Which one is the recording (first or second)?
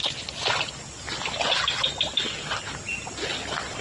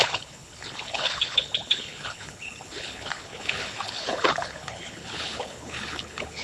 first